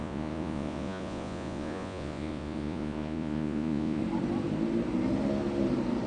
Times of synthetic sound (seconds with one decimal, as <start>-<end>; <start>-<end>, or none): 0.0-4.0